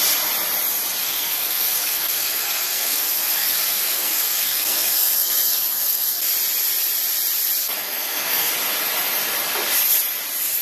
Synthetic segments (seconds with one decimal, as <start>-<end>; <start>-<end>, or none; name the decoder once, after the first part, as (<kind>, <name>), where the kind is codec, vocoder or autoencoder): 1.0-6.2 (codec, SNAC); 7.6-8.5